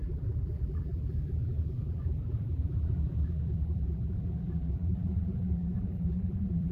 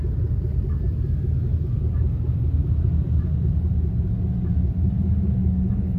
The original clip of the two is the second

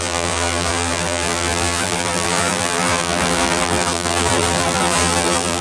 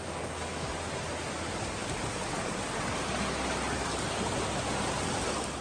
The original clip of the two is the second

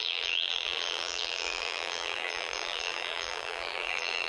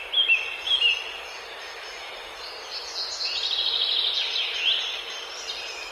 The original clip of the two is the second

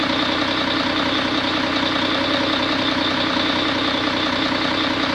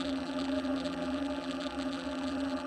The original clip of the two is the first